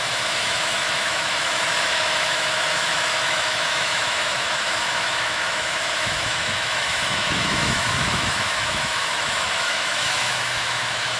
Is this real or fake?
fake